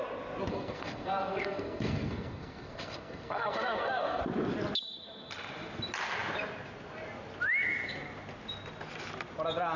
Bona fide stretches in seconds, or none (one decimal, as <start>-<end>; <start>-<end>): 0.0-0.5; 4.2-9.8